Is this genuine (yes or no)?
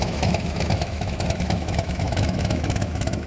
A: no